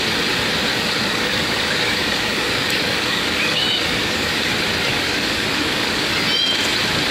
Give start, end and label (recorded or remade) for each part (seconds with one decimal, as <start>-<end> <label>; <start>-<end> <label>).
0.0-0.7 recorded; 0.7-4.5 remade; 4.5-4.9 recorded; 4.9-6.1 remade; 6.1-7.1 recorded